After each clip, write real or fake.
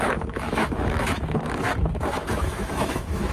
fake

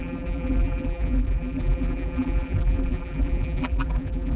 fake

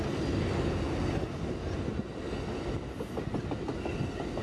real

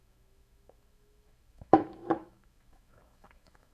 fake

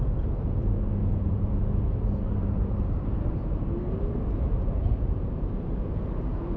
fake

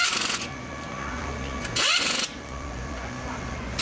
fake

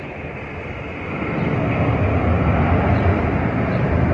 real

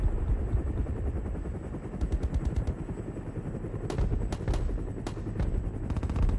real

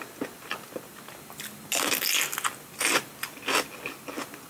real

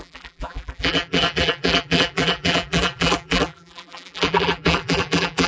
fake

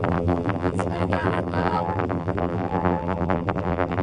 fake